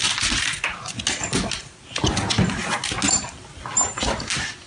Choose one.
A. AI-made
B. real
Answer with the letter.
B